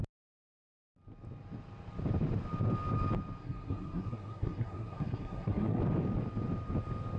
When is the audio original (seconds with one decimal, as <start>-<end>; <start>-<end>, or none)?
0.0-3.4; 5.8-7.2